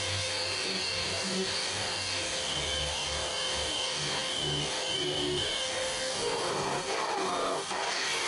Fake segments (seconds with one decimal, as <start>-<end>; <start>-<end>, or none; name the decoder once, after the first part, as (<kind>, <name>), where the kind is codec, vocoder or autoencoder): 0.0-8.3 (codec, DAC)